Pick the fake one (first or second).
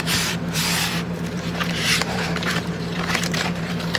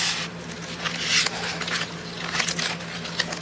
first